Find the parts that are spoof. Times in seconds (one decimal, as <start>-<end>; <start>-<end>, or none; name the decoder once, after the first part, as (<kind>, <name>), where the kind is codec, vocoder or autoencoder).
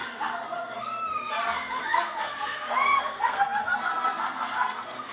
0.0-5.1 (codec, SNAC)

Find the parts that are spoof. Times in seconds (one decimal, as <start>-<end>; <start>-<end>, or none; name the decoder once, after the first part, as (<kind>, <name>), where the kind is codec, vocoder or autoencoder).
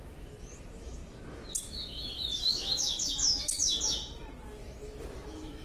0.0-1.0 (autoencoder, DAC-VAE); 1.6-4.0; 4.6-5.6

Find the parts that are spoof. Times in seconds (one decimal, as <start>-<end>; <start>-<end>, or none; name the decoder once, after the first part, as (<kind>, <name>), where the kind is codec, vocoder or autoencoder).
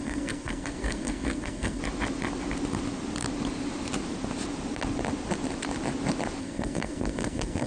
0.0-1.8 (codec, SNAC); 6.4-7.7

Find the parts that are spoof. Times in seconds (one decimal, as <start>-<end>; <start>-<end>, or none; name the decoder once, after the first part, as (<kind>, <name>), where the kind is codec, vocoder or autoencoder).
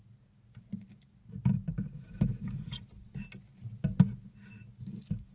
1.9-2.5 (autoencoder, DAC-VAE)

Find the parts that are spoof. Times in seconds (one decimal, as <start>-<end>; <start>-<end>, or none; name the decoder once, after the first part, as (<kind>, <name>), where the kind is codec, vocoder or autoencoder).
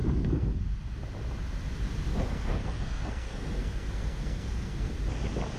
0.0-0.6 (codec, SNAC); 2.1-4.9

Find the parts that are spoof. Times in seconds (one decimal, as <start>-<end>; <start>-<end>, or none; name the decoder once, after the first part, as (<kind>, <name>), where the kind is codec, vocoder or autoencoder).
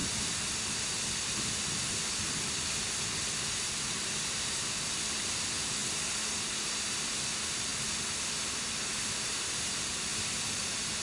4.3-5.8 (vocoder, BigVGAN v2); 6.9-11.0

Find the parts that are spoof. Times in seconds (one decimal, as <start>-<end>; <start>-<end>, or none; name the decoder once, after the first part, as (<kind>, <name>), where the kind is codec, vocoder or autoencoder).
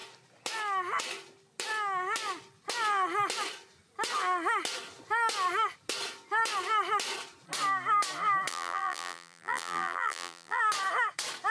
8.5-10.6 (vocoder, BigVGAN v2)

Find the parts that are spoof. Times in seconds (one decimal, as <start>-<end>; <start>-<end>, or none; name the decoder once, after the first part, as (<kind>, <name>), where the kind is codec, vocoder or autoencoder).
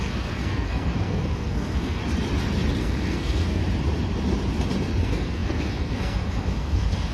0.0-2.0 (codec, SNAC); 2.8-3.6; 5.0-7.1